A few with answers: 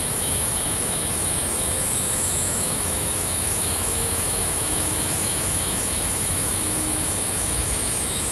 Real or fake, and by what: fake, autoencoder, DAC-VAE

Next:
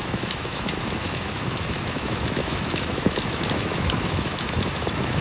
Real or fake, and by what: fake, autoencoder, DAC-VAE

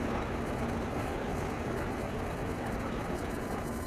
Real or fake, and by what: fake, autoencoder, DAC-VAE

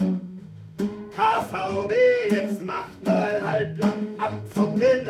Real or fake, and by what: fake, autoencoder, DAC-VAE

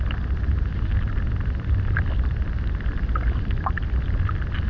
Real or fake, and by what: real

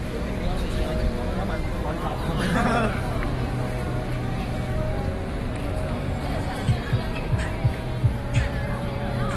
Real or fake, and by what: real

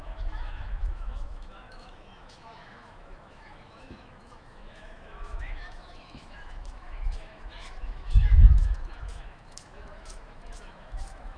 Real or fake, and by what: fake, autoencoder, DAC-VAE